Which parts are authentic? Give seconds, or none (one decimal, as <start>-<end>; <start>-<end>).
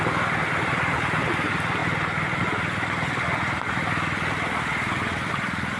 0.0-5.8